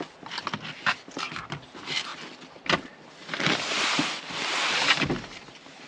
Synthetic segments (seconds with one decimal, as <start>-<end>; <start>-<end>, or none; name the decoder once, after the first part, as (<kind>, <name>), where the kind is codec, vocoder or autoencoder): 0.0-2.1 (vocoder, BigVGAN v2); 4.2-5.9